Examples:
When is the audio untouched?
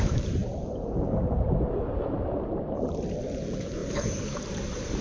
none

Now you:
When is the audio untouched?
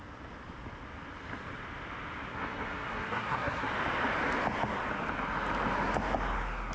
0.0-2.3; 3.7-6.7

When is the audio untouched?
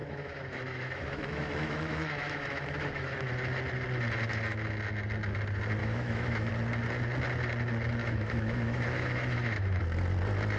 3.3-5.8; 6.5-8.0; 9.8-10.6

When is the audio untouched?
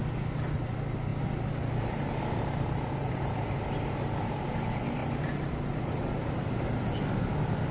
0.0-7.7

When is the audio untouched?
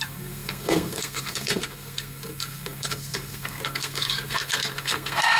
none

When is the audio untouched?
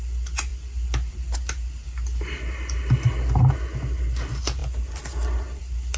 0.0-6.0